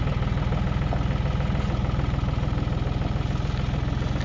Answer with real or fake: real